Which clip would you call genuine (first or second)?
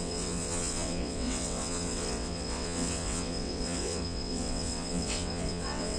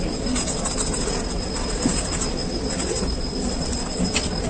second